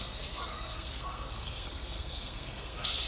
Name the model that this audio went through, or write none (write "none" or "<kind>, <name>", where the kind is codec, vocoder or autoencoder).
codec, SNAC